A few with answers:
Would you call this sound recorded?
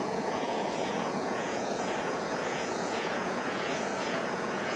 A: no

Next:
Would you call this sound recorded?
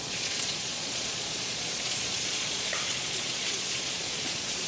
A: no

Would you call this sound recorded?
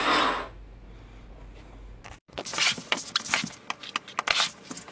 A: yes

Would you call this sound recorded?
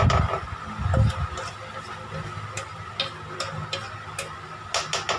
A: yes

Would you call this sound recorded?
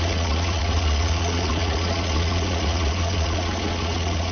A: no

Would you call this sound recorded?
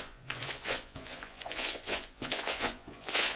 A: no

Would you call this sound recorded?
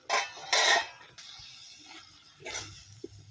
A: yes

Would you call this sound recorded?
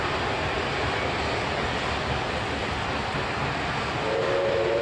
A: yes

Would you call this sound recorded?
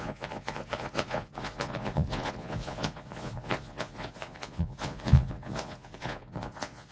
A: no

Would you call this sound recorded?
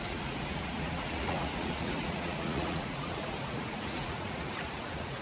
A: no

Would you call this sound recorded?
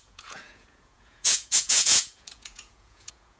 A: no